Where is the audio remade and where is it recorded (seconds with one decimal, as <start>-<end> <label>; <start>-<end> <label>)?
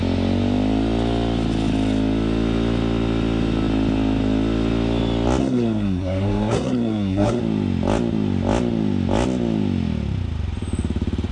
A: 0.0-5.4 recorded; 5.4-7.4 remade; 7.4-11.3 recorded